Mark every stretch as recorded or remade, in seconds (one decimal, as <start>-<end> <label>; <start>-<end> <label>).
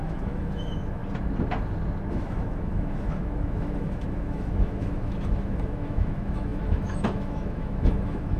0.0-1.0 remade; 1.0-2.1 recorded; 2.1-8.4 remade